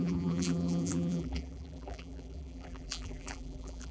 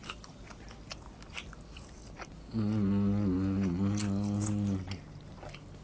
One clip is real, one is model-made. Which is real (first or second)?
second